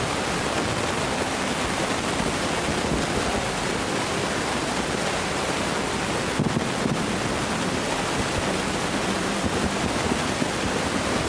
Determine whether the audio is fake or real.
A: real